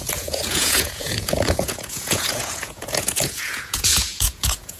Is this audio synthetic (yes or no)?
yes